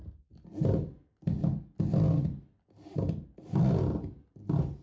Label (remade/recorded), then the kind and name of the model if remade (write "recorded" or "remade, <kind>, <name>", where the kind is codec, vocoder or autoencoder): recorded